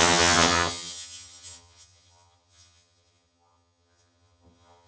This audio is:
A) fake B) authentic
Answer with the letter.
A